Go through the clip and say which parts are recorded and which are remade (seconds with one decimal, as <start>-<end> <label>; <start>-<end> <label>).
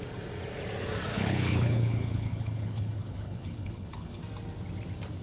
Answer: 0.0-1.1 recorded; 1.1-4.2 remade; 4.2-5.2 recorded